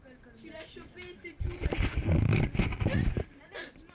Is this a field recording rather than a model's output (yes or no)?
yes